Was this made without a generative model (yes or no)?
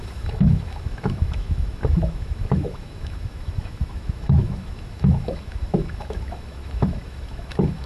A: no